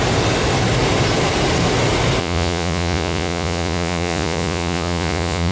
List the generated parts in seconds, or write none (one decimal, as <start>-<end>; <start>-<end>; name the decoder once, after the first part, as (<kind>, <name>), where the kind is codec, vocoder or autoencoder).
2.2-5.5 (vocoder, Vocos)